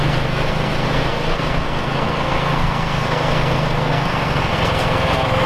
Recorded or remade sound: remade